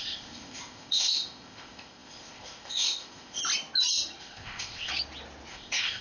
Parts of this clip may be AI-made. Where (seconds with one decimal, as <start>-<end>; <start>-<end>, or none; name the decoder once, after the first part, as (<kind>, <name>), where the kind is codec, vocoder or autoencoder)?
0.0-3.4 (codec, ZipCodec); 4.2-4.9; 5.5-6.0